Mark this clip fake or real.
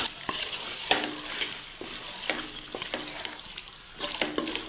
real